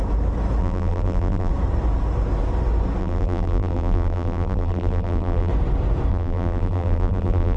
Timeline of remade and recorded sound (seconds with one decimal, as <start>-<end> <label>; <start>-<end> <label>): 0.0-0.6 recorded; 0.6-1.5 remade; 1.5-3.0 recorded; 3.0-5.5 remade; 5.5-6.1 recorded; 6.1-7.6 remade